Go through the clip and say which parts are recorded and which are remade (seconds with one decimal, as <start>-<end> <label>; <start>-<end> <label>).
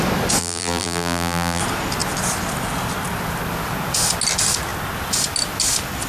0.0-0.4 recorded; 0.4-1.6 remade; 1.6-6.1 recorded